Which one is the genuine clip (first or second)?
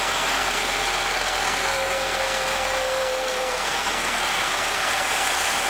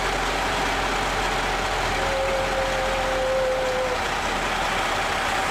second